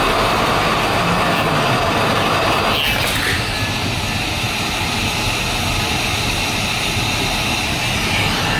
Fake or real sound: real